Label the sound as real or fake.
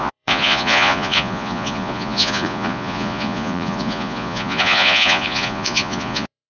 fake